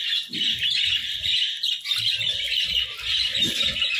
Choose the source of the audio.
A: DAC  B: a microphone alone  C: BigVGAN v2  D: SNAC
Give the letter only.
C